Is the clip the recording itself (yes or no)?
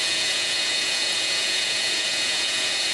no